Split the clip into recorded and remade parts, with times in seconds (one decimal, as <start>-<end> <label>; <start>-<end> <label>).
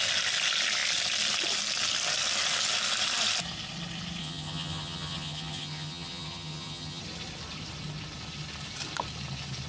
0.0-4.2 recorded; 4.2-7.0 remade; 7.0-9.7 recorded